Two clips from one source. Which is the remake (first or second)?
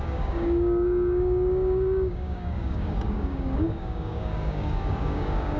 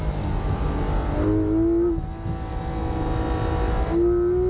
first